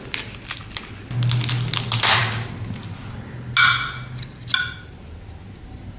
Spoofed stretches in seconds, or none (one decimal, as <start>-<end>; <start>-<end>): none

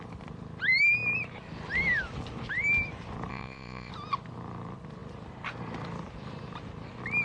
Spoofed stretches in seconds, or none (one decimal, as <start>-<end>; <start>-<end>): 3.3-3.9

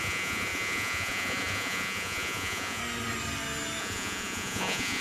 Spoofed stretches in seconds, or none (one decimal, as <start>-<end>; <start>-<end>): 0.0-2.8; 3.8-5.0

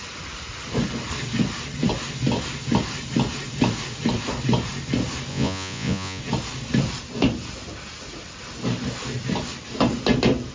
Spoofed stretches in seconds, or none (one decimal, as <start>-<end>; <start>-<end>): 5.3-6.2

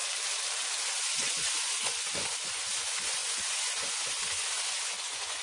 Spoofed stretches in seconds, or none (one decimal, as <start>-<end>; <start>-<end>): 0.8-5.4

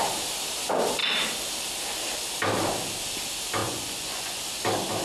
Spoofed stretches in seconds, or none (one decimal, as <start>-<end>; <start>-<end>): 3.6-4.4

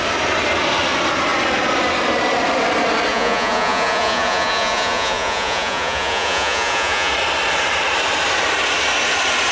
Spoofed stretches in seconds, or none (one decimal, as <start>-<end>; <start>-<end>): 3.1-7.1